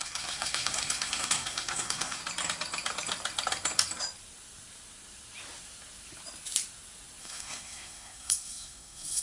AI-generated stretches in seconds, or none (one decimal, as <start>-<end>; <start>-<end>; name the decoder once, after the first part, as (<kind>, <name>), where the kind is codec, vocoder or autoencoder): 0.0-2.2 (codec, SNAC); 7.2-9.2